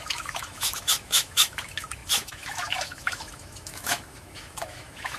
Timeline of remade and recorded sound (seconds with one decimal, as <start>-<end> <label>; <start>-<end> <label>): 0.0-5.2 remade